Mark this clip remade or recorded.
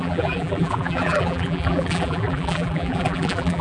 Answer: remade